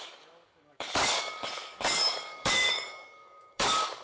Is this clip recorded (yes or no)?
no